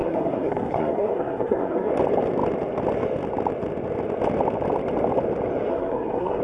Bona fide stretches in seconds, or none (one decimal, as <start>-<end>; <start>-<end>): 1.9-5.7